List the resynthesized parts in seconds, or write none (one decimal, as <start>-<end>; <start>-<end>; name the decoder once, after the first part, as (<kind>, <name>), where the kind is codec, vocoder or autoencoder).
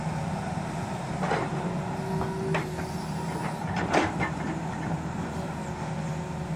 3.4-4.6 (vocoder, BigVGAN v2)